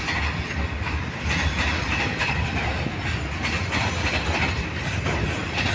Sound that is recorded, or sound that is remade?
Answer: recorded